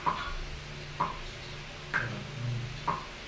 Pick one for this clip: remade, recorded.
recorded